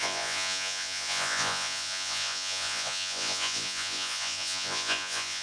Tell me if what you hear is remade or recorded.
remade